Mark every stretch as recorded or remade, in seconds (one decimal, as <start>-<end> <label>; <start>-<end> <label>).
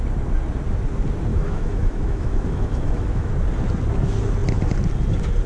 0.0-1.3 recorded; 1.3-3.3 remade; 3.3-5.5 recorded